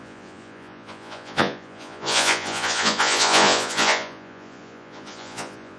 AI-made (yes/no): yes